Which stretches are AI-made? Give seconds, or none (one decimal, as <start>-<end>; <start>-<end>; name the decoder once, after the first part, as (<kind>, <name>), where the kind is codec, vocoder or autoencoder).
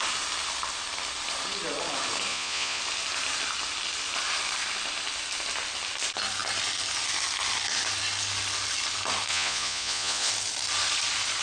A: 2.3-2.8 (vocoder, Vocos); 9.3-10.3